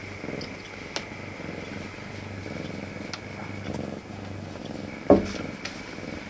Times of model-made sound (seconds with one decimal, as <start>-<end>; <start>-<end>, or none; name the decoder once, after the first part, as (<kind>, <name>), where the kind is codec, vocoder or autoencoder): none